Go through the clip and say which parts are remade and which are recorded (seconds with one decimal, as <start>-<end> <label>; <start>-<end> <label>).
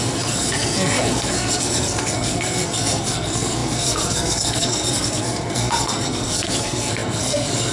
0.0-7.7 remade